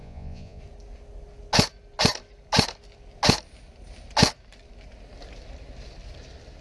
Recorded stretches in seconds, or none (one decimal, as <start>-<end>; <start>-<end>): 0.6-6.6